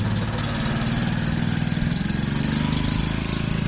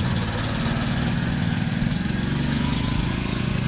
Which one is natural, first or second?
first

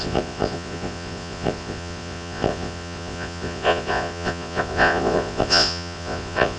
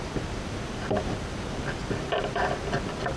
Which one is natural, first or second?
second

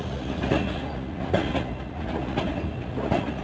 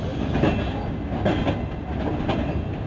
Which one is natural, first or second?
second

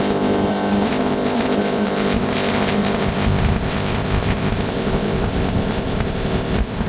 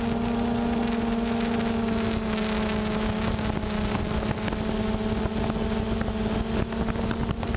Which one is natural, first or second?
second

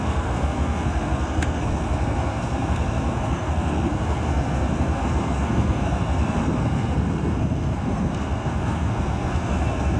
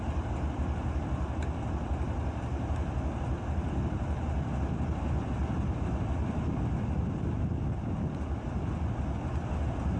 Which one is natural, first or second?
second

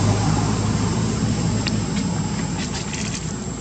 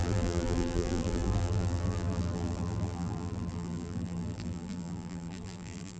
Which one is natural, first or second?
first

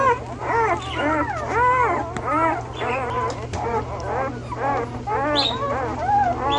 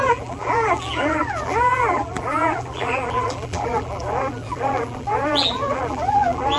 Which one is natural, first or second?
first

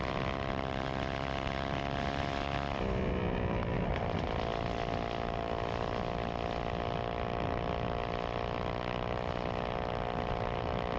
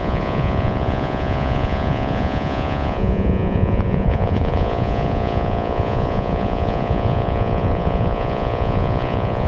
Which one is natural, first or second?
first